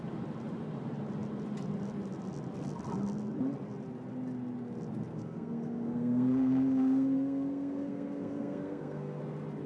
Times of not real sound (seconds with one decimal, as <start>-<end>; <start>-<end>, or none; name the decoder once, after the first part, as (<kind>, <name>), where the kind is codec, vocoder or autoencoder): 5.1-9.2 (codec, SNAC)